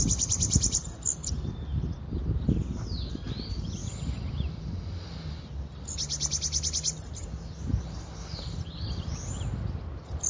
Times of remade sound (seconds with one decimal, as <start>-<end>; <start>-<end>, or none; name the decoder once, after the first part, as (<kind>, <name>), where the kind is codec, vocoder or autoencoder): none